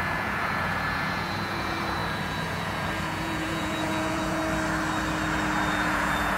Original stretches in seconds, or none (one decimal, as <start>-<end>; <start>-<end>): 4.4-5.7